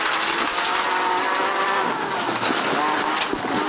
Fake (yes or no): no